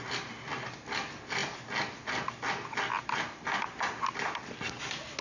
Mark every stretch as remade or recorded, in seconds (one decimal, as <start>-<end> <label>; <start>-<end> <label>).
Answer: 0.0-5.2 recorded